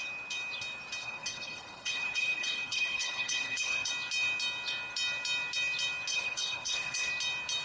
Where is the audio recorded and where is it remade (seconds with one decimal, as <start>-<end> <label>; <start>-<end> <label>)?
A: 0.0-1.0 recorded; 1.0-3.9 remade; 3.9-6.1 recorded; 6.1-7.1 remade; 7.1-7.6 recorded